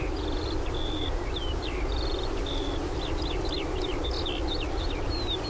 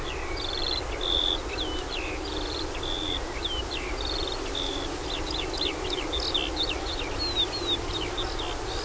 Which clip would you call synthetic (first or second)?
first